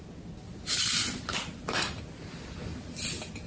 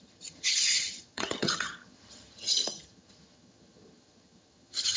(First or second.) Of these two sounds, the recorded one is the first